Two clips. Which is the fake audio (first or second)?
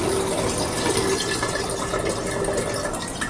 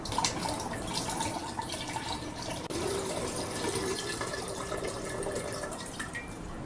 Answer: second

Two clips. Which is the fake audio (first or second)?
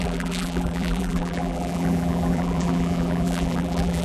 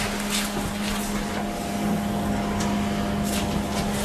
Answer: first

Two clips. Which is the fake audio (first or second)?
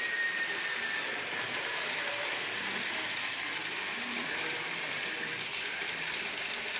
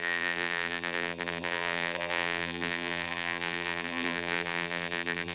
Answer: second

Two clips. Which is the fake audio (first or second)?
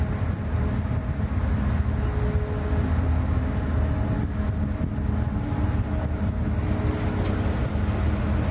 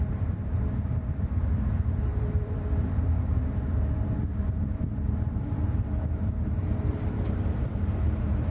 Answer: second